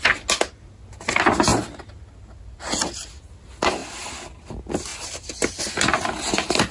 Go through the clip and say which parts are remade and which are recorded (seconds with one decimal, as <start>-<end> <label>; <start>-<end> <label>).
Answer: 0.0-6.7 recorded